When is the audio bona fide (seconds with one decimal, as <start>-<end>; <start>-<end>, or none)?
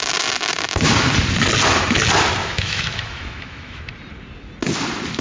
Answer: 0.0-2.4; 3.8-5.2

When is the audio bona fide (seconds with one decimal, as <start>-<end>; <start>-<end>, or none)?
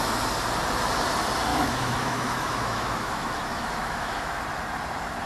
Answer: 0.0-1.5; 4.4-5.3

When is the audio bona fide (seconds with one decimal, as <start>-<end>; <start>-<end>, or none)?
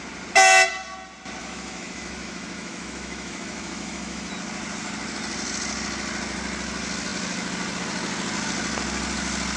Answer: 0.0-1.4; 4.3-9.6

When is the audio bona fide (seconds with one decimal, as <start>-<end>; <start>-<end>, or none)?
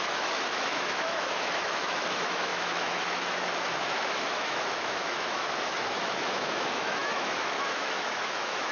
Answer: none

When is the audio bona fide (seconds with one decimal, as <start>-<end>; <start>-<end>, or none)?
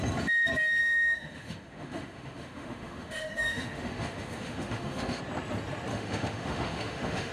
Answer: 0.0-0.8; 5.2-5.9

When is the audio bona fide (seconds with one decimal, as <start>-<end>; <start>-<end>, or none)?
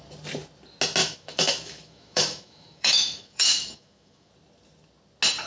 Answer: 0.0-1.0; 4.3-5.5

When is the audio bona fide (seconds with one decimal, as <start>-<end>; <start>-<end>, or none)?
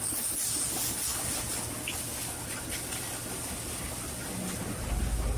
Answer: 0.0-5.4